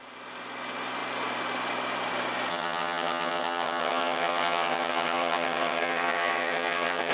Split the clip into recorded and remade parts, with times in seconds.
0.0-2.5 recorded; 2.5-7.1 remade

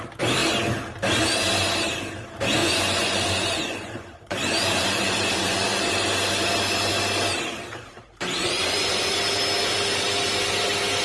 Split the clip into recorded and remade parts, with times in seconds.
0.0-2.6 recorded; 2.6-5.9 remade; 5.9-8.4 recorded; 8.4-9.2 remade; 9.2-11.0 recorded

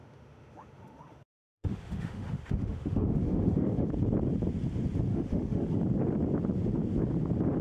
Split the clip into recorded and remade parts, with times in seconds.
0.0-3.9 remade; 3.9-5.1 recorded; 5.1-5.7 remade; 5.7-7.6 recorded